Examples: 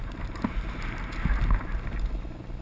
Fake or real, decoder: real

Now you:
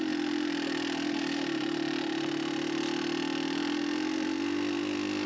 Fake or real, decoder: real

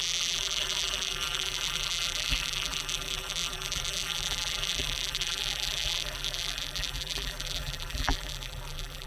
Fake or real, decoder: fake, vocoder, BigVGAN v2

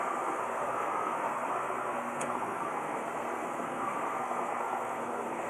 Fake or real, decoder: fake, codec, SNAC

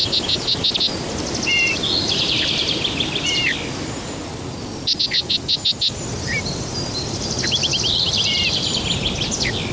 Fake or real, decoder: real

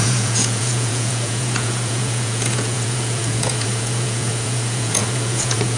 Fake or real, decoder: fake, vocoder, Vocos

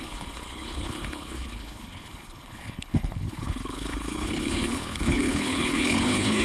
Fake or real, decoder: fake, codec, HILCodec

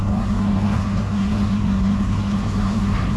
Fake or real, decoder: fake, codec, SNAC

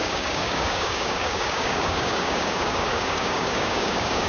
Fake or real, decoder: fake, codec, DAC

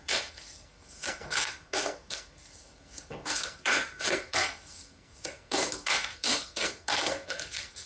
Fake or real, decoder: fake, codec, SNAC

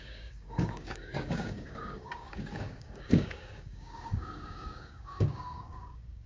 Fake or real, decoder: fake, codec, DAC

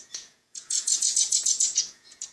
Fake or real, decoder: fake, vocoder, Vocos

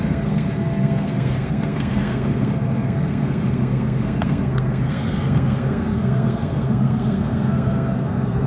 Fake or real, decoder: fake, codec, SNAC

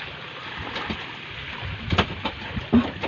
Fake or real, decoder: real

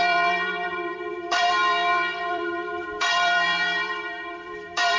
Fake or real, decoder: fake, vocoder, BigVGAN v2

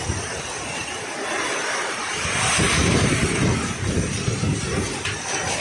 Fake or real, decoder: real